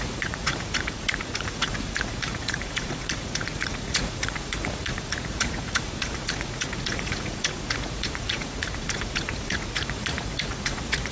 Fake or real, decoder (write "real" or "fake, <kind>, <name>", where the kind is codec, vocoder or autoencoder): fake, vocoder, Vocos